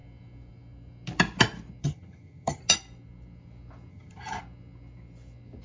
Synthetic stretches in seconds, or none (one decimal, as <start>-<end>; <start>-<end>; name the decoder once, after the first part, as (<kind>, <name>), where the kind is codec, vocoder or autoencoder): 1.8-2.6 (vocoder, HiFi-GAN); 3.9-4.4